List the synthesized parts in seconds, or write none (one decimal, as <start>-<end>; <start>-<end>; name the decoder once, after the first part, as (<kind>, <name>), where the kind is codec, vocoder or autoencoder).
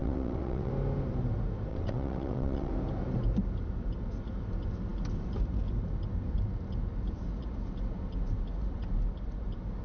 0.0-0.7 (vocoder, WaveNeXt); 1.7-2.7